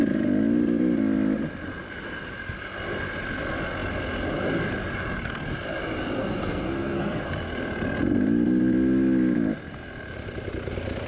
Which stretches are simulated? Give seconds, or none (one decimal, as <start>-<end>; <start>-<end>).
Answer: 6.2-7.3